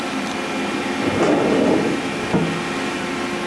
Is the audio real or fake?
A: real